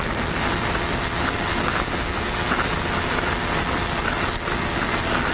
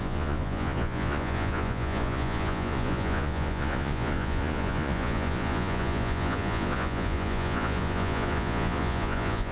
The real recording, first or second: first